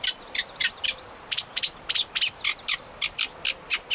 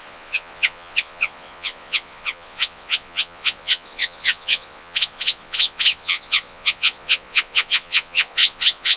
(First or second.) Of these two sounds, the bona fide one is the first